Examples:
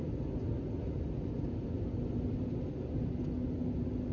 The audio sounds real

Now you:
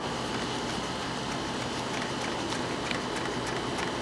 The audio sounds real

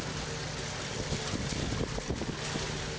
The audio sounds real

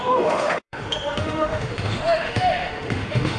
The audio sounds fake